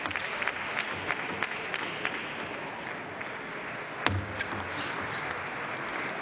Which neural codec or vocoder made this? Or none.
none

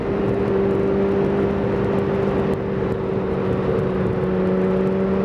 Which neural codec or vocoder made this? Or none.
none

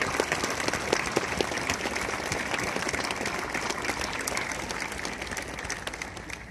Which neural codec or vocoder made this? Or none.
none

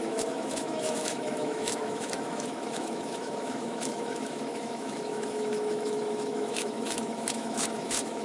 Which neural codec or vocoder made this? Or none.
autoencoder, DAC-VAE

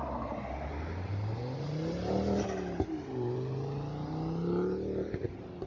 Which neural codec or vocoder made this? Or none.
none